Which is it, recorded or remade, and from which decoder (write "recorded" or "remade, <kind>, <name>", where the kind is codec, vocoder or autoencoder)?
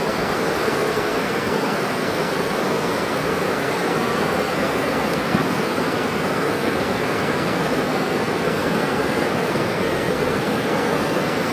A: remade, codec, SNAC